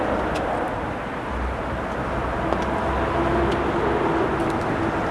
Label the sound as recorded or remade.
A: recorded